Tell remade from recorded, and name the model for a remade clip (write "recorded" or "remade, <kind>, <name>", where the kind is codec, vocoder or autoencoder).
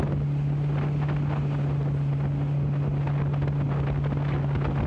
recorded